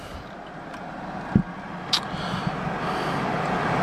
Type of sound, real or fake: real